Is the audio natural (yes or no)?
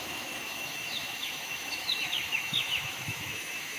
no